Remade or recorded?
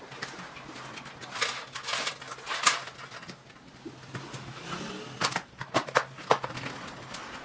recorded